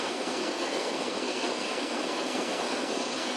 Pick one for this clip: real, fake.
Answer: fake